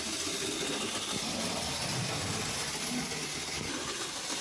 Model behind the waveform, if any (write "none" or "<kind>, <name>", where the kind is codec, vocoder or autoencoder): none